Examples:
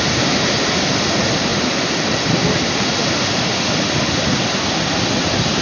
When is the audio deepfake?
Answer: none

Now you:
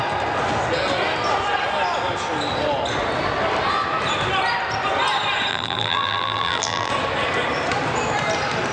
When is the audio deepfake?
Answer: 5.5-6.9 (vocoder, BigVGAN v2)

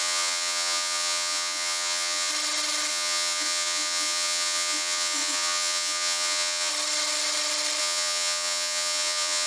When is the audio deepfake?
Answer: 0.0-2.3 (vocoder, Vocos); 2.9-6.7; 7.8-9.5

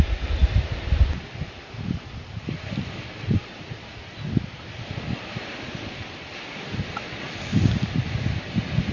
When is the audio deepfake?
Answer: none

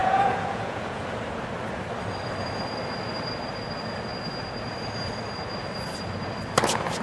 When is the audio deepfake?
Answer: 0.0-1.0 (vocoder, Vocos)

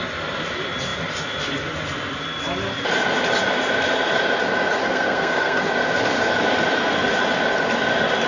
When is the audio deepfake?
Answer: 4.8-5.7 (codec, SNAC)

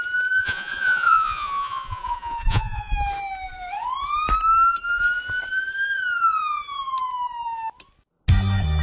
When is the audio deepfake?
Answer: 0.4-2.9 (vocoder, Vocos)

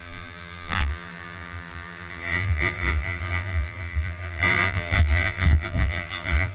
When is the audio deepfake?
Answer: 0.0-6.5 (vocoder, BigVGAN v2)